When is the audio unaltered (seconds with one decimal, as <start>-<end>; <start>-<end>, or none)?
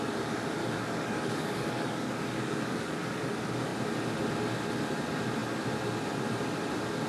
0.0-0.6; 3.2-7.1